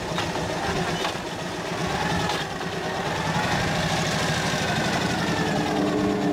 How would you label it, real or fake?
real